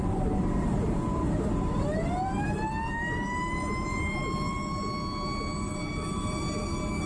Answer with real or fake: fake